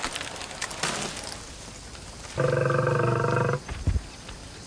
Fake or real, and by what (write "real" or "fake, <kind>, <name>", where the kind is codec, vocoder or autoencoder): real